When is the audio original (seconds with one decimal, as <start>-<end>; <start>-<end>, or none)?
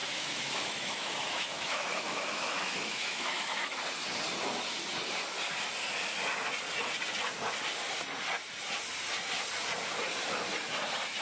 3.8-11.2